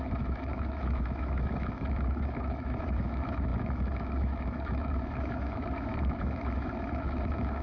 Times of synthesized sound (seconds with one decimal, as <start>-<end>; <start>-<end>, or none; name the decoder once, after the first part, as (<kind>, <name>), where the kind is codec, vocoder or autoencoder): 0.0-7.6 (autoencoder, DAC-VAE)